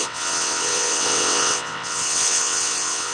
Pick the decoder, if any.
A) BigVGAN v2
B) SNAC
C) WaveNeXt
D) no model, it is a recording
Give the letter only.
C